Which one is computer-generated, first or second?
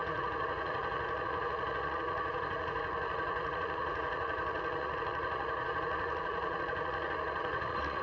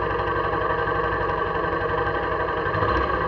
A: first